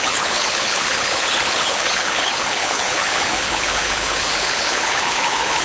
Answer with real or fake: fake